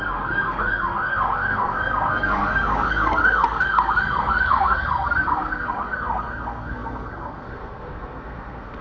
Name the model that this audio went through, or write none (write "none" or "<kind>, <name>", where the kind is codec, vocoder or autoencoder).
codec, SNAC